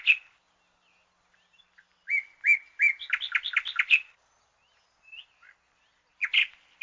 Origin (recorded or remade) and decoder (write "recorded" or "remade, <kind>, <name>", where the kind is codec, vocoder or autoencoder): recorded